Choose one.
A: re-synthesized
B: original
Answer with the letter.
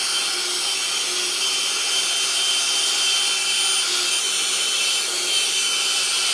B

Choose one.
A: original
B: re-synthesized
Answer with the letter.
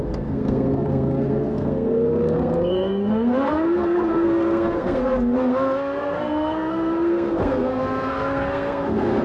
B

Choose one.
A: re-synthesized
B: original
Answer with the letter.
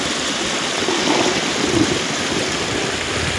B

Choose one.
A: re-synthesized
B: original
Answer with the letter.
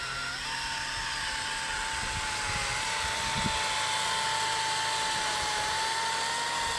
B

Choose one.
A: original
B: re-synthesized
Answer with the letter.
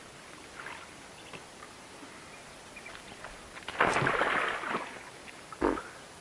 A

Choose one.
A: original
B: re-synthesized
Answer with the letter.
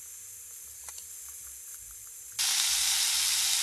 A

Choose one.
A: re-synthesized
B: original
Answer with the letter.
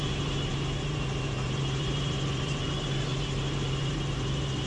A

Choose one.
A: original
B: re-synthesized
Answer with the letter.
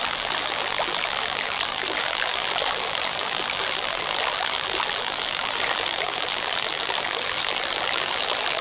B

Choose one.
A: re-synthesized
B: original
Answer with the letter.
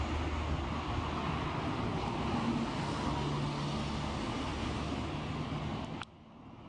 B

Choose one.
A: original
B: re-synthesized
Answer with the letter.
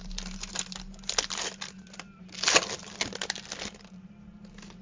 A